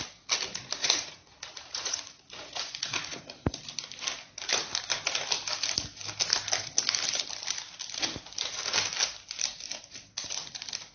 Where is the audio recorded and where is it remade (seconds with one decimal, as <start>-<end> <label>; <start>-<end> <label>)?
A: 0.0-0.8 recorded; 0.8-3.6 remade; 3.6-10.9 recorded